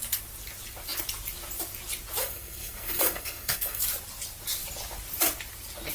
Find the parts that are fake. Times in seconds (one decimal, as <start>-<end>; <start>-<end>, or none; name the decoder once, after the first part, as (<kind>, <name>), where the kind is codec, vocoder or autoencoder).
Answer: 2.2-3.8 (codec, SNAC)